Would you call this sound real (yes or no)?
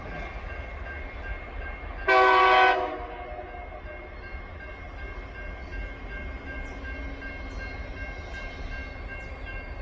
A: yes